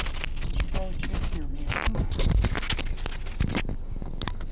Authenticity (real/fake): real